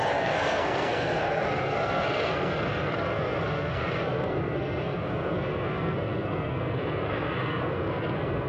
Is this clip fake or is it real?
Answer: fake